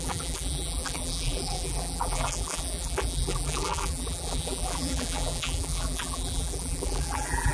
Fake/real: fake